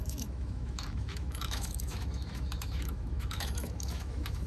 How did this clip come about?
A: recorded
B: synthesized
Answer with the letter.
B